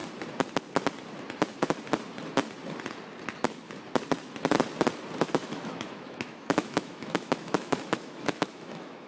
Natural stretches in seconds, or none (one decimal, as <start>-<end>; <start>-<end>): 0.0-5.4